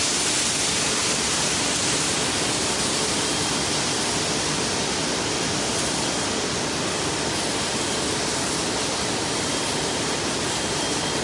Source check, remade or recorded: remade